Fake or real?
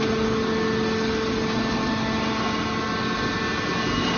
real